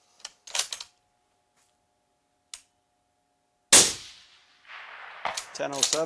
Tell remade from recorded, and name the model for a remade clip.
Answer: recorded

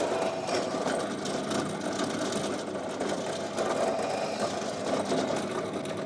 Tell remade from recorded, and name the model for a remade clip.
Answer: recorded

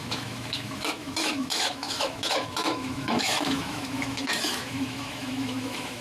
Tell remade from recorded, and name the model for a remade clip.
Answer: remade, autoencoder, DAC-VAE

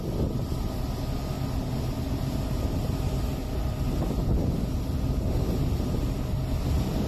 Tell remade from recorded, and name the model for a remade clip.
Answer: recorded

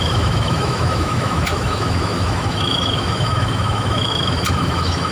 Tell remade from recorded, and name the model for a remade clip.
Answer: remade, autoencoder, DAC-VAE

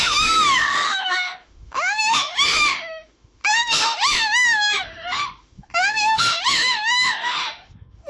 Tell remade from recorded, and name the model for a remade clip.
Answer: remade, autoencoder, DAC-VAE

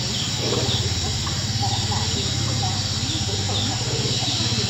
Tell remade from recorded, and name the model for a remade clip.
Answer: recorded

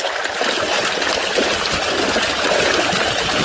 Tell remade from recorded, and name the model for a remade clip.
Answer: recorded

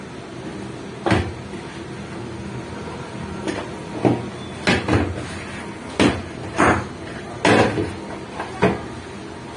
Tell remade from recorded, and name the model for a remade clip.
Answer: recorded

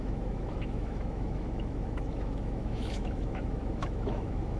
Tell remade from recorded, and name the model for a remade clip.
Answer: remade, autoencoder, DAC-VAE